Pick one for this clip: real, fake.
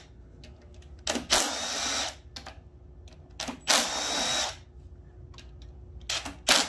real